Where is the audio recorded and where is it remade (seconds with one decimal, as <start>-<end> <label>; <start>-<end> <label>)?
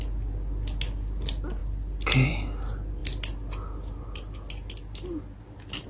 0.0-5.9 recorded